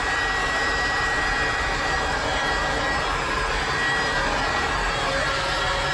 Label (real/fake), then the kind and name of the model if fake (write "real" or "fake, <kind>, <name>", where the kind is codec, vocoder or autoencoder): fake, vocoder, BigVGAN v2